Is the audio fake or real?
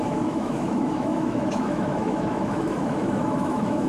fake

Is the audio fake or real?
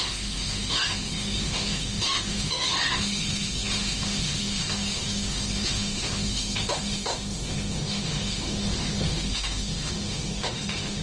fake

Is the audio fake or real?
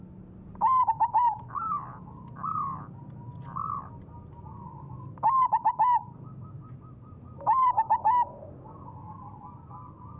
real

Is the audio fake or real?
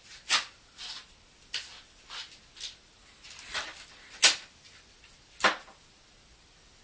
real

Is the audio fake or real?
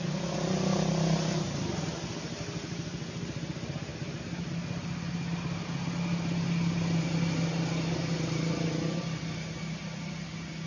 real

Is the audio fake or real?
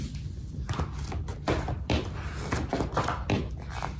real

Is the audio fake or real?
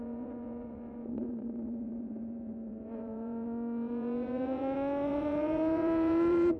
fake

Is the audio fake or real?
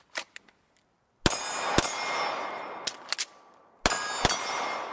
real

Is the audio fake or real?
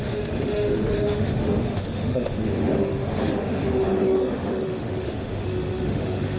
fake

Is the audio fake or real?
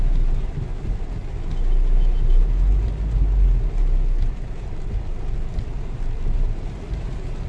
real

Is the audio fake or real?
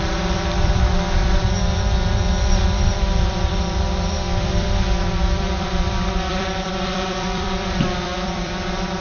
fake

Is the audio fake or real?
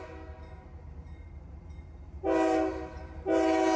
real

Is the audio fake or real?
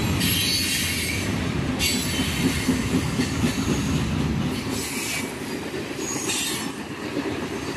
real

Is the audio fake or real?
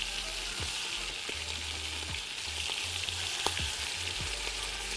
real